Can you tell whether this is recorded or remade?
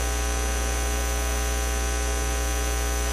recorded